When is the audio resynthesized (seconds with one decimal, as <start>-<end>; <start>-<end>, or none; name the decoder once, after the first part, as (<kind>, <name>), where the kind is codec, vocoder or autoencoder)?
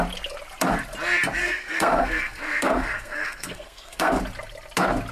1.4-4.2 (codec, SNAC)